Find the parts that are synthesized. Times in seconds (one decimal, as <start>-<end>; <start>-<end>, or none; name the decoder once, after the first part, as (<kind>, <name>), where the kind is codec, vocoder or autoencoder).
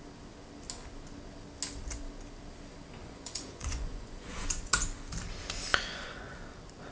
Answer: 3.0-4.7 (vocoder, Vocos); 5.7-6.4